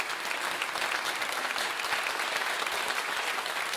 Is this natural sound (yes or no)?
yes